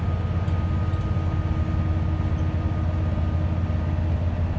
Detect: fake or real real